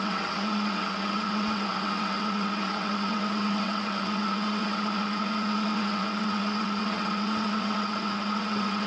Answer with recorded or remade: remade